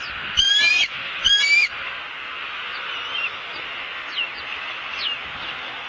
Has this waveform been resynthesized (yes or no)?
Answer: no